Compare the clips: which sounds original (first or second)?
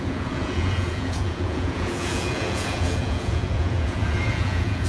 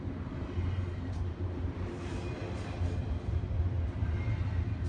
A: second